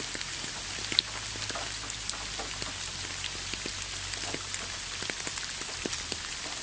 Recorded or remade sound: recorded